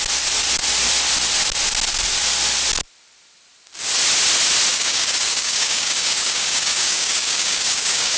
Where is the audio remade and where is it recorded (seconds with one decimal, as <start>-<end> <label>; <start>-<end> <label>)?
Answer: 0.0-4.7 recorded; 4.7-8.2 remade